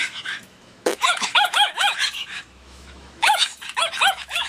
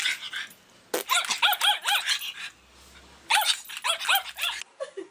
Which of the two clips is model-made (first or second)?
first